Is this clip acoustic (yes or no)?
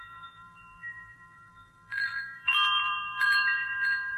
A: no